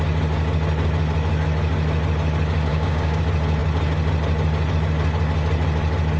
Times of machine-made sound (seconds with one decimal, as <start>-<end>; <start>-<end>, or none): 2.7-3.2